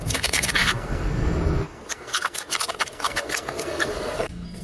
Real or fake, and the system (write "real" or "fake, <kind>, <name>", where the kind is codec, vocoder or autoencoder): fake, codec, SNAC